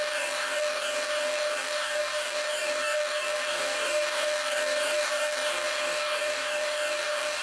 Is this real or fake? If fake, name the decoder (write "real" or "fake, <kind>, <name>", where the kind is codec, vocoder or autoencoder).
fake, codec, DAC